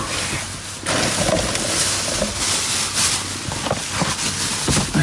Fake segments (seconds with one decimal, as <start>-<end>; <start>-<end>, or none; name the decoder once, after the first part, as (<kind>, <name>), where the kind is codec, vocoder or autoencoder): none